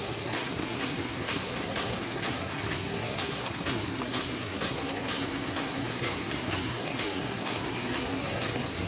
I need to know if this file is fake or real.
fake